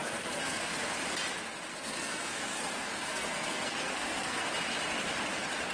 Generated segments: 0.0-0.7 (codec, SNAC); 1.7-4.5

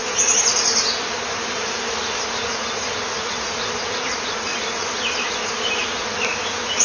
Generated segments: 0.0-0.6 (vocoder, BigVGAN v2); 4.5-5.7

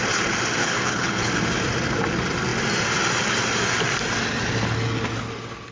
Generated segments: 0.6-1.3 (codec, HILCodec)

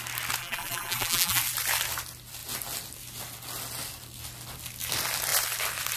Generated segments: 0.4-1.4 (vocoder, BigVGAN v2)

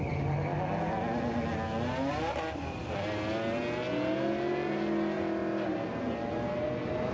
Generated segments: none

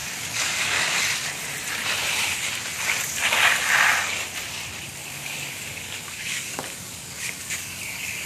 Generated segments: 0.0-1.0 (codec, DAC); 5.0-8.3

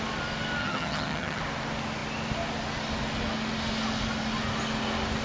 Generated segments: 0.6-1.4 (vocoder, HiFi-GAN)